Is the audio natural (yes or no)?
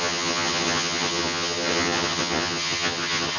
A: no